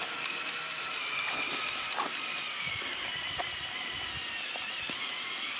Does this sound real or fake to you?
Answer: fake